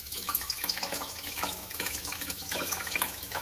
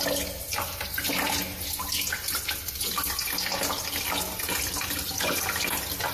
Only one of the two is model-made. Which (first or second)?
first